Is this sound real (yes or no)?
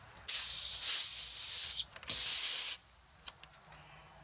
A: yes